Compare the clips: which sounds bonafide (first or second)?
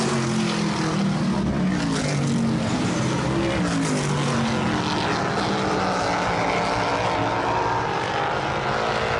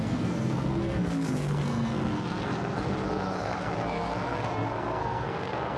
first